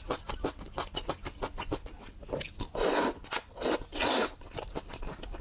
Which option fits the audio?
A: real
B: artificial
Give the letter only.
A